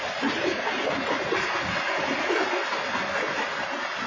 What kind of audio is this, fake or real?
real